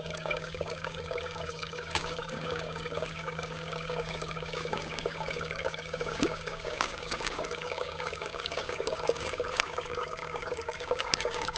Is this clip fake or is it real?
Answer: fake